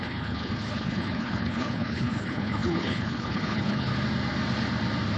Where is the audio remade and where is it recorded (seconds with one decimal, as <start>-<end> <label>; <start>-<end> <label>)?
0.0-3.9 remade; 3.9-5.2 recorded